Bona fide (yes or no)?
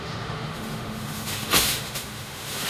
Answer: no